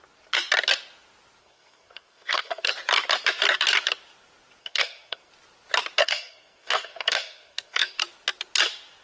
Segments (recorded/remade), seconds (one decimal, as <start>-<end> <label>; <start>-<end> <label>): 0.0-1.4 recorded; 1.4-2.7 remade; 2.7-4.6 recorded; 4.6-5.3 remade; 5.3-6.0 recorded; 6.0-8.0 remade; 8.0-9.0 recorded